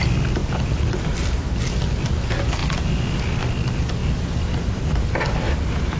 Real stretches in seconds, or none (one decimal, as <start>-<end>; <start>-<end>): 0.0-6.0